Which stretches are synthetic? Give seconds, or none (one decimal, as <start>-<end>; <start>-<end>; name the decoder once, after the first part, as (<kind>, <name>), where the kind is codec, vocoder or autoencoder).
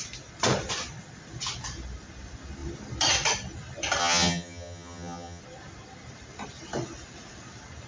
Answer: 4.0-5.4 (vocoder, HiFi-GAN)